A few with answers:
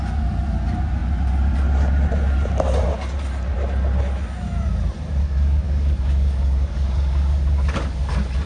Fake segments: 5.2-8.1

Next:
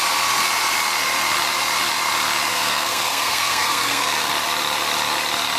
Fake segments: 2.5-4.3

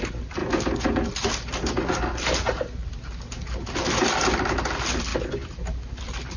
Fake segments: none

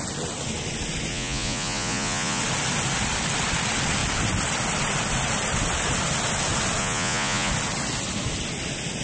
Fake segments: 1.1-2.4; 6.8-7.5